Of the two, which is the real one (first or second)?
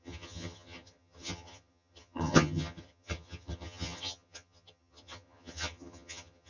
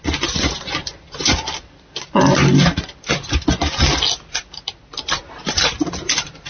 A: second